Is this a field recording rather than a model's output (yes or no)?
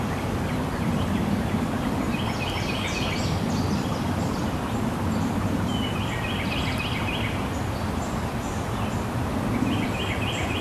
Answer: yes